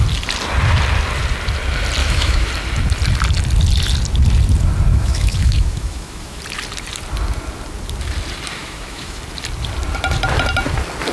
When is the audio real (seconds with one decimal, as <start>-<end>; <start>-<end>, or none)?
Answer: 0.0-2.0; 2.5-4.9; 6.4-8.6; 9.2-11.1